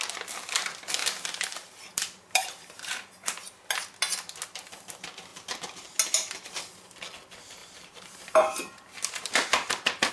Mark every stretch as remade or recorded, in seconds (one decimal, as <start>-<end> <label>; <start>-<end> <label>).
0.0-1.0 recorded; 1.0-3.7 remade; 3.7-7.6 recorded; 7.6-10.1 remade